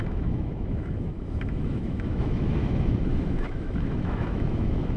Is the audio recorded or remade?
remade